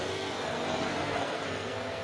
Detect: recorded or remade remade